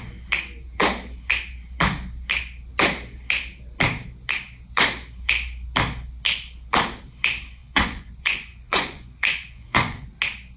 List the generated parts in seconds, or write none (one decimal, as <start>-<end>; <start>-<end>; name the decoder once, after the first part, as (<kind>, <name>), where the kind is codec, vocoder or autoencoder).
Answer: 7.6-10.1 (vocoder, Vocos)